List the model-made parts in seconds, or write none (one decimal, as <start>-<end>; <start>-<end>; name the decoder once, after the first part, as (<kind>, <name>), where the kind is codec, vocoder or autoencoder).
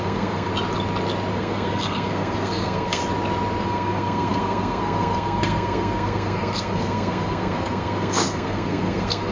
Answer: 0.0-0.5 (codec, SNAC); 1.3-3.0; 3.6-9.3